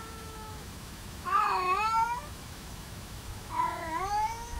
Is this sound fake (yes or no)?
yes